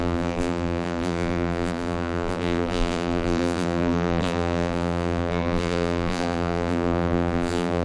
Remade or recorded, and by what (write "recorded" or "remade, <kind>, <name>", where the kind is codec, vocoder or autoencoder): remade, vocoder, BigVGAN v2